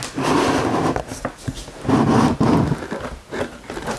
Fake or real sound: real